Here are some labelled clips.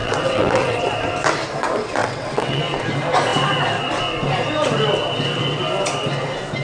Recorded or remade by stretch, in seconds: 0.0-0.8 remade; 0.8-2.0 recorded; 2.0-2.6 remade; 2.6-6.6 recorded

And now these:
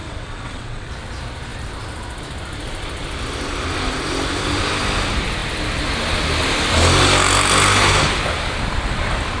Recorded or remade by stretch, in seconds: 0.0-0.9 remade; 0.9-9.4 recorded

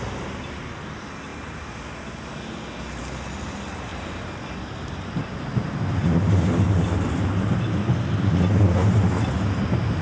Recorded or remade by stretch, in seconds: 0.0-10.0 recorded

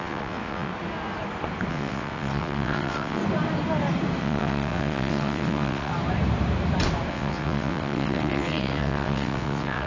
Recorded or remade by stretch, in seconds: 0.0-0.7 remade; 0.7-1.7 recorded; 1.7-3.2 remade; 3.2-4.2 recorded; 4.2-5.9 remade; 5.9-7.1 recorded; 7.1-9.9 remade

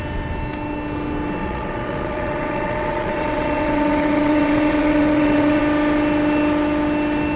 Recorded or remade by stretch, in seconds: 0.0-1.4 recorded; 1.4-5.6 remade; 5.6-7.4 recorded